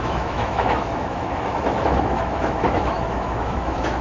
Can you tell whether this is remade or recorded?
remade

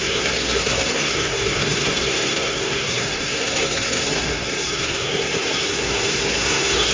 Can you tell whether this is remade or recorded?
remade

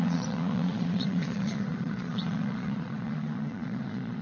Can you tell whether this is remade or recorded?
remade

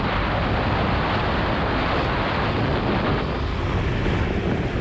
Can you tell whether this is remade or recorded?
recorded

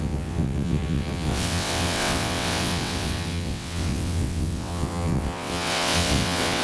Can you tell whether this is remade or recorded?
remade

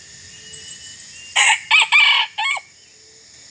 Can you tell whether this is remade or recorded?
recorded